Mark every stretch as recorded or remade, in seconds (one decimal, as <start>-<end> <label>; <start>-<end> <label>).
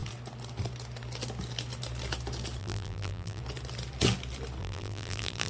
0.0-2.6 recorded; 2.6-3.4 remade; 3.4-4.6 recorded; 4.6-5.5 remade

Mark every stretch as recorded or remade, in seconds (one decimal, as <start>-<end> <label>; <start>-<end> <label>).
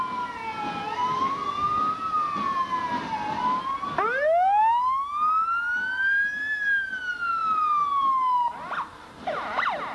0.0-9.9 recorded